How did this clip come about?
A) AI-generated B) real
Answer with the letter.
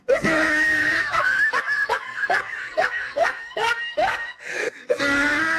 A